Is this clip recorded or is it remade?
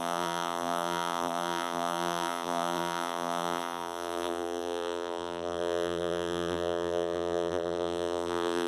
remade